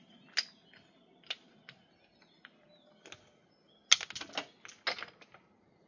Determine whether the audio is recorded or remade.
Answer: recorded